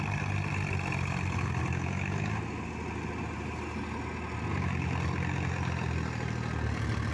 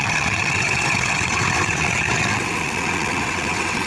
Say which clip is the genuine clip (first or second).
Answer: first